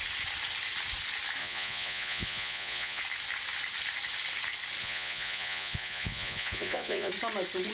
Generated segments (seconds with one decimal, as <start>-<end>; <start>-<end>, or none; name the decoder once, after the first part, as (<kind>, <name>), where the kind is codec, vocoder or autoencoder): 1.4-3.0 (vocoder, Vocos); 4.8-7.1